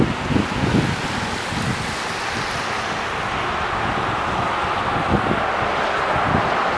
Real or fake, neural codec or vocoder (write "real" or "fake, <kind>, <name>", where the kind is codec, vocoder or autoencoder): real